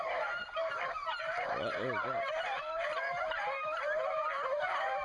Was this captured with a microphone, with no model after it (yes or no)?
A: no